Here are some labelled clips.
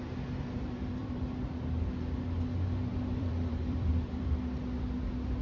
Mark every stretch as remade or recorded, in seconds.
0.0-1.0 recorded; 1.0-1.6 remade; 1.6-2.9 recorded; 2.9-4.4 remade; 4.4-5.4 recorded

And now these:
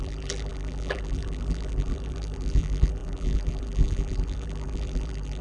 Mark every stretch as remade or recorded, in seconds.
0.0-5.4 remade